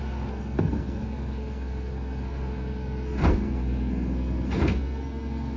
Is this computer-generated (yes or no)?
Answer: yes